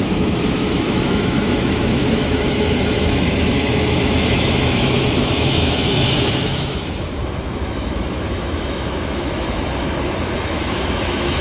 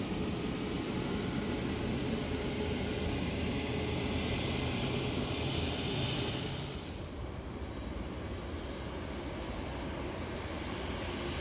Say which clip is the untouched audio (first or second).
second